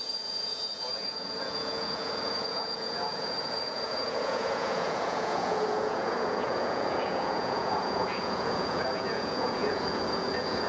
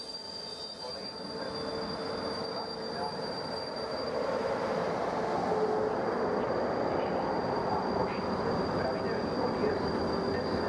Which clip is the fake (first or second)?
first